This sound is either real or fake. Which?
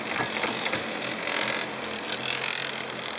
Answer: real